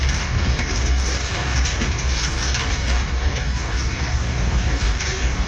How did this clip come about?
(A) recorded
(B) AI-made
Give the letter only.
B